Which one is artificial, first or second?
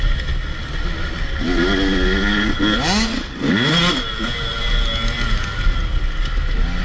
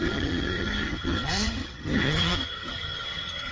second